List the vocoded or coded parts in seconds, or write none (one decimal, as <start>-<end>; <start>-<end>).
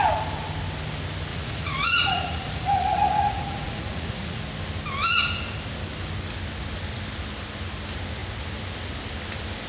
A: 1.3-4.4